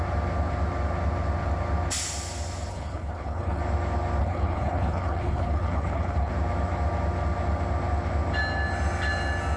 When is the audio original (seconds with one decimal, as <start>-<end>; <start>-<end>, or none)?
0.0-2.7; 3.6-4.2; 6.3-9.6